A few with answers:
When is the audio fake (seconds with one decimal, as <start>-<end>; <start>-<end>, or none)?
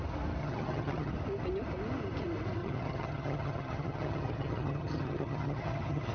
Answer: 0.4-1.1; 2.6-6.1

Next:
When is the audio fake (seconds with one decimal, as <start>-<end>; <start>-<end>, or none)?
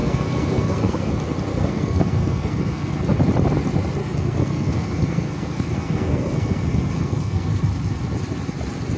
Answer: 0.0-1.1; 1.5-3.2; 4.0-7.6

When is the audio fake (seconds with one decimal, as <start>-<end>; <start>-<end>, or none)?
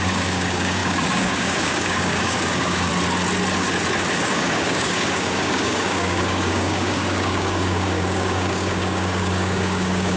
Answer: 0.0-2.9; 4.1-10.2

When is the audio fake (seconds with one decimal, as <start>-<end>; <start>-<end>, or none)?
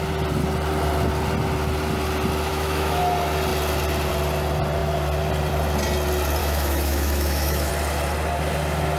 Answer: 2.5-3.0; 6.4-7.7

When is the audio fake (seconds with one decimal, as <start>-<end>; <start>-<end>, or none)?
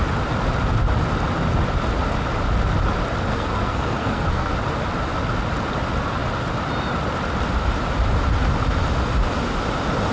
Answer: 3.3-4.5